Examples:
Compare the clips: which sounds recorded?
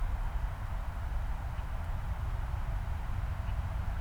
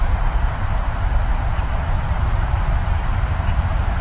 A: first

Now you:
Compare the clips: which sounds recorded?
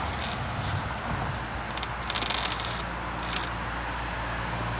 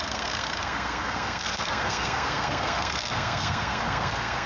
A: first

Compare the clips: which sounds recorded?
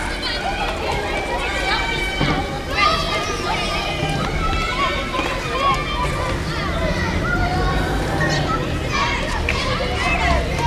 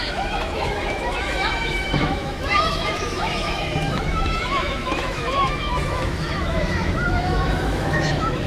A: first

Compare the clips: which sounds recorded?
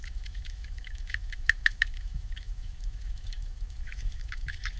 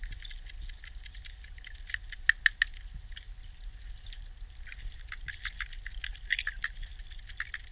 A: second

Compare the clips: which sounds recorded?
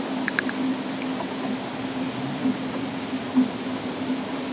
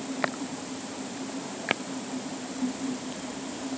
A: first